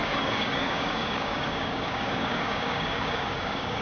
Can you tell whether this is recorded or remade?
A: remade